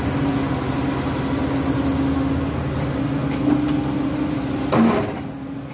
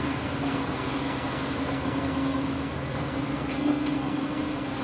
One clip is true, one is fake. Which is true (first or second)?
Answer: first